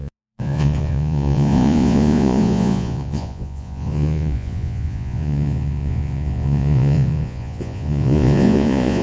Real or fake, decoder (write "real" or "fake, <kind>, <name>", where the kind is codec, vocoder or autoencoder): fake, vocoder, Vocos